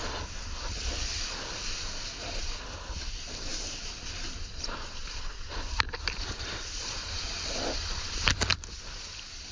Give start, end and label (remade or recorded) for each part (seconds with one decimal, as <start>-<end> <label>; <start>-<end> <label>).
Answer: 0.0-3.5 recorded; 3.5-7.6 remade; 7.6-8.5 recorded; 8.5-9.5 remade